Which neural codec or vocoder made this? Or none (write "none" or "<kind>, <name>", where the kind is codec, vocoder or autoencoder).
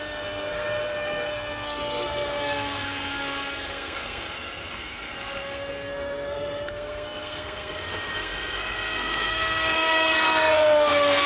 codec, SNAC